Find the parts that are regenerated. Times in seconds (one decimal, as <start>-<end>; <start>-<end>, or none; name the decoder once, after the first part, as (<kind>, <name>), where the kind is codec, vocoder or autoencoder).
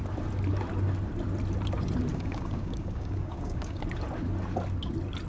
2.1-3.8 (codec, DAC)